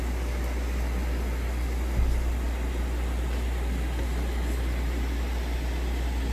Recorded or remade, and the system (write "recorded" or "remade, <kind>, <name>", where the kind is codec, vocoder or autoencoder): recorded